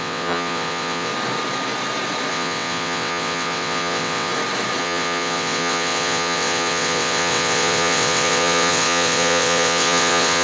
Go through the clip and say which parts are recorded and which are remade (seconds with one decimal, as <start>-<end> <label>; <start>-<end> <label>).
0.0-1.1 remade; 1.1-2.3 recorded; 2.3-4.3 remade; 4.3-4.8 recorded; 4.8-10.4 remade